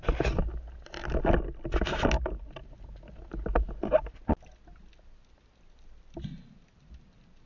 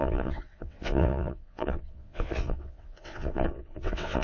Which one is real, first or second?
first